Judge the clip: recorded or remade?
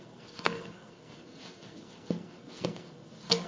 remade